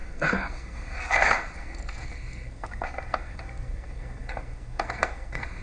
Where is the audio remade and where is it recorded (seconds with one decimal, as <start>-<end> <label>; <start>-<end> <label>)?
0.0-5.6 remade